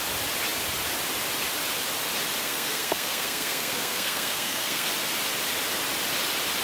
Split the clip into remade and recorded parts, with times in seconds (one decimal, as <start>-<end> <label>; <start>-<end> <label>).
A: 0.0-2.4 recorded; 2.4-4.9 remade; 4.9-6.6 recorded